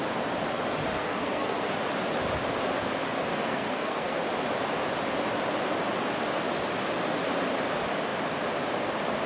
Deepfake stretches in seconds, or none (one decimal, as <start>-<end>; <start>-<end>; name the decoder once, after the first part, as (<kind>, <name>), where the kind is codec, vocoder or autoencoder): 1.0-1.7 (codec, SNAC); 3.3-4.2